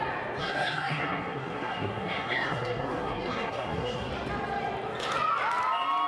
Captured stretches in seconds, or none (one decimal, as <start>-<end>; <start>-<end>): 0.0-0.4; 4.1-6.1